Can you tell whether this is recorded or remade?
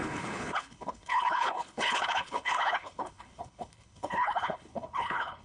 remade